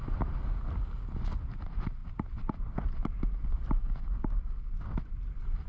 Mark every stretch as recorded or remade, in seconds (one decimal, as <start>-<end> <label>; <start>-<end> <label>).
0.0-5.7 recorded